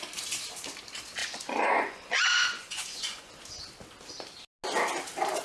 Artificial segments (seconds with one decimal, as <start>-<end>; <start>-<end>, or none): 1.2-3.3